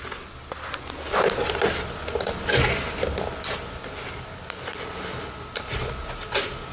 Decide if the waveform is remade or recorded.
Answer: recorded